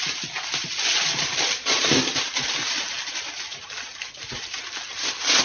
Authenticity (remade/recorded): recorded